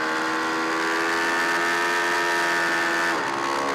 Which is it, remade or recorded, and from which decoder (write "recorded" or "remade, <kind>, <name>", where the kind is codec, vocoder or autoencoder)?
recorded